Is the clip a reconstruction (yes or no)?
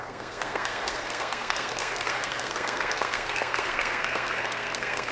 yes